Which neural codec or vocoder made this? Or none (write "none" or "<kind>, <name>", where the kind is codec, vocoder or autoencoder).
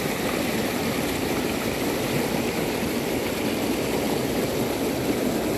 none